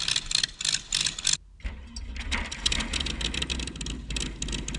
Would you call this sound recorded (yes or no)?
yes